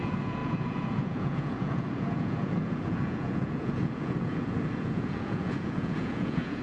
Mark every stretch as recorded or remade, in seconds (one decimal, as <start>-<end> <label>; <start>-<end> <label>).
0.0-6.6 remade